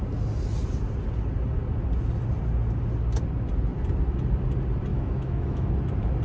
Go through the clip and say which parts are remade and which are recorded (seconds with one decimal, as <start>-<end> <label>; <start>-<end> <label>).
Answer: 0.0-4.9 recorded; 4.9-5.7 remade; 5.7-6.2 recorded